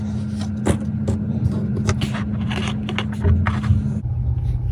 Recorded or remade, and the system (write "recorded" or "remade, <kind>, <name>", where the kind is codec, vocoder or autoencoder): recorded